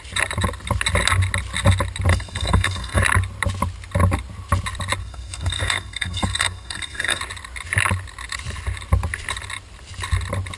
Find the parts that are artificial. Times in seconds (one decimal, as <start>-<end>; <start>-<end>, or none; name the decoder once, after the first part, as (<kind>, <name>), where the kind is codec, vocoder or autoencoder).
2.1-3.0 (codec, SNAC); 5.0-7.2